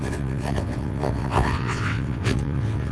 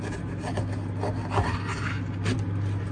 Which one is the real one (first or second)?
second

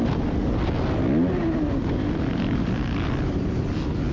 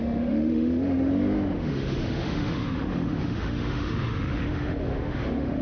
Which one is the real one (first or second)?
first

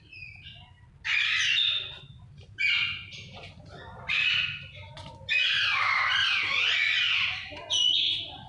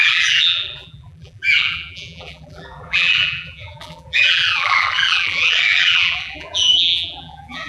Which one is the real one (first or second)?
first